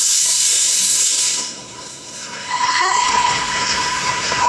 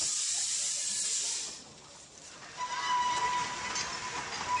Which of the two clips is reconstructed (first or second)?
first